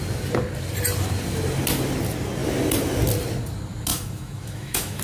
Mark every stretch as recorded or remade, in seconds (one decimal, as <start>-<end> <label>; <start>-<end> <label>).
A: 0.0-3.9 recorded; 3.9-5.0 remade